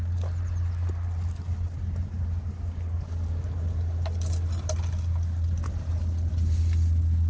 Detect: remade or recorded recorded